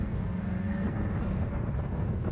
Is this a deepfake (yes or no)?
yes